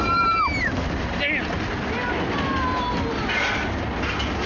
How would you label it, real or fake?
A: real